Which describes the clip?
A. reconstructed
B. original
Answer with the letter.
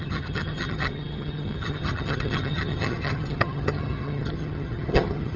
A